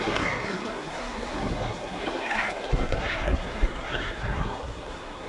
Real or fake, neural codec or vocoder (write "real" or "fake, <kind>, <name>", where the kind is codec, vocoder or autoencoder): fake, codec, SNAC